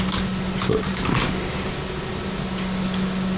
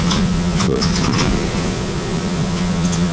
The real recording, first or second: first